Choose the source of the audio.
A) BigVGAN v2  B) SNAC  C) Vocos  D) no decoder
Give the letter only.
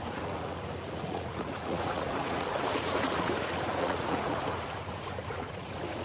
C